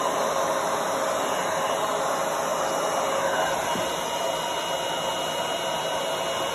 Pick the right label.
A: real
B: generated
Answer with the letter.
A